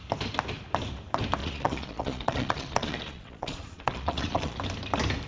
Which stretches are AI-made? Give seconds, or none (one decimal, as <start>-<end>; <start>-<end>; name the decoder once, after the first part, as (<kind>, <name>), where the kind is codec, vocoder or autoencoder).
1.4-4.6 (vocoder, Vocos)